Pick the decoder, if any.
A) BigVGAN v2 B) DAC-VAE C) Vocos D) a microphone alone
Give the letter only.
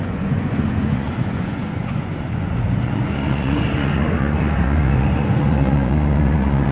C